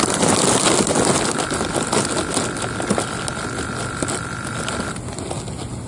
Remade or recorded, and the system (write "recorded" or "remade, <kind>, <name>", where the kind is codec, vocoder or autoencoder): recorded